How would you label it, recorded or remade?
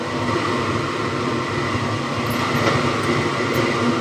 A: recorded